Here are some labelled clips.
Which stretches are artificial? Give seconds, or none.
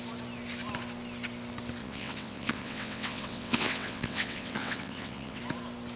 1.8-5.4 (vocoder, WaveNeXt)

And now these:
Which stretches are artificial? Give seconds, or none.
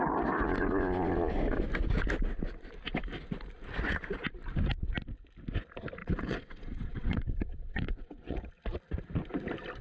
6.0-8.5 (vocoder, WaveNeXt)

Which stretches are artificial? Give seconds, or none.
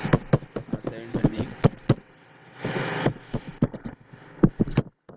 1.1-2.6 (vocoder, WaveNeXt)